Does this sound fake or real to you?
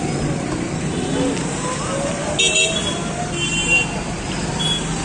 real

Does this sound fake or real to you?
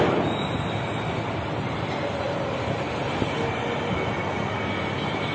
real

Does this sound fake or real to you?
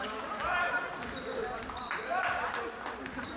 real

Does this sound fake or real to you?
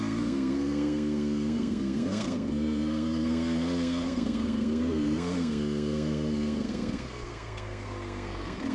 fake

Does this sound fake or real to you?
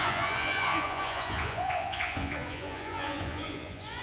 fake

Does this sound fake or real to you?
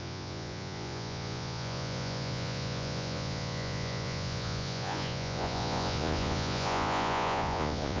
fake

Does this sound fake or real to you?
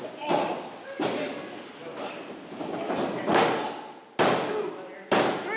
real